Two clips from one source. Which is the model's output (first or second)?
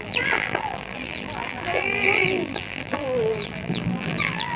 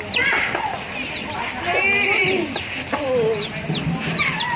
first